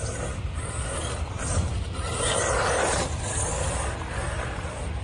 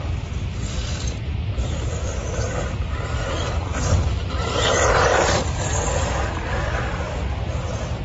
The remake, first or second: first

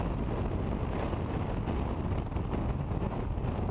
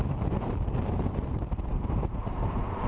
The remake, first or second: second